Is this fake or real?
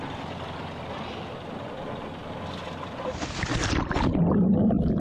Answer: real